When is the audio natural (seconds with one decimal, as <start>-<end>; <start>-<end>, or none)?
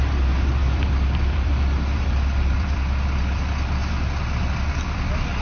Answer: 0.0-0.6; 2.8-5.4